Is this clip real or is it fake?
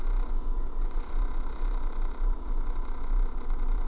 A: fake